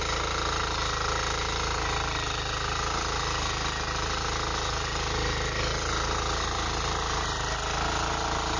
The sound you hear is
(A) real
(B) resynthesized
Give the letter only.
A